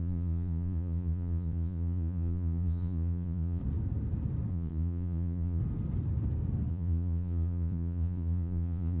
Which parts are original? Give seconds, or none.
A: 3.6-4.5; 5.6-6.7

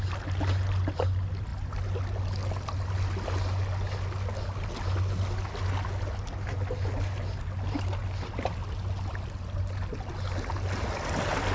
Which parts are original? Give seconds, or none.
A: 0.0-11.5

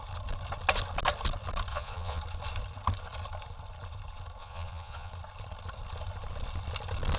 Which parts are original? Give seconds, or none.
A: 0.0-1.7; 2.2-4.4; 5.1-7.2